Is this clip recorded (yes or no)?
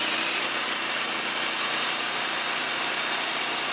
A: yes